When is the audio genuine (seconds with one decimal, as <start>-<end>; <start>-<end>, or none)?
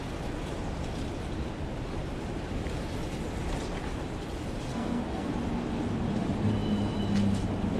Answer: 0.0-4.7; 5.3-7.8